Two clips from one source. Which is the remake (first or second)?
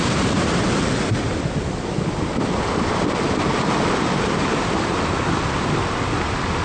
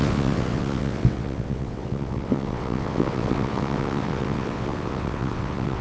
second